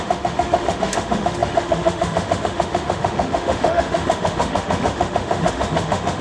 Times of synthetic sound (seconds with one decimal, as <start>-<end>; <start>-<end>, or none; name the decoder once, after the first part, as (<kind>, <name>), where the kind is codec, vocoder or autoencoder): 0.0-6.2 (autoencoder, DAC-VAE)